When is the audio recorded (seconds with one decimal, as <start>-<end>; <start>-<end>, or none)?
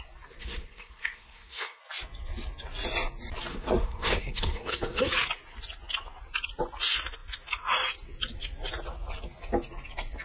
0.0-0.4; 1.8-3.5; 5.1-10.2